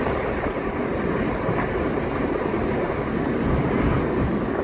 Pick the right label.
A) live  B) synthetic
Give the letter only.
A